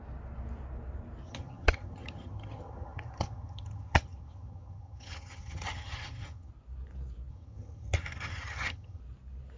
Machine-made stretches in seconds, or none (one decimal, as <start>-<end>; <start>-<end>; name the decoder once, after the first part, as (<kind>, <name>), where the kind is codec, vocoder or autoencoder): 1.3-6.5 (vocoder, HiFi-GAN); 7.3-9.0